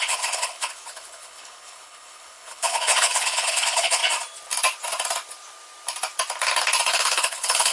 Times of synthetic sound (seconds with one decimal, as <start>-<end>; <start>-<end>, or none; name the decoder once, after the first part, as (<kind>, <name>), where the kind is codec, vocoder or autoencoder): 0.0-4.0 (codec, HILCodec); 6.9-7.7